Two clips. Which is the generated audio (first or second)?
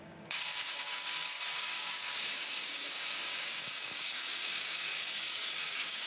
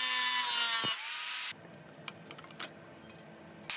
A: first